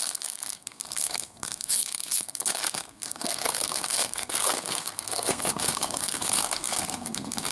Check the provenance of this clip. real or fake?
fake